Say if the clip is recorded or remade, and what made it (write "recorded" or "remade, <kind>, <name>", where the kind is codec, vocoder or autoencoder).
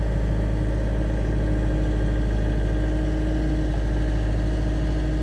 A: recorded